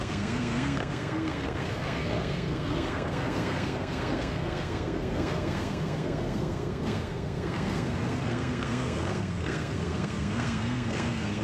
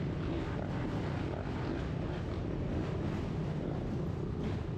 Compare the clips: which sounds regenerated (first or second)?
first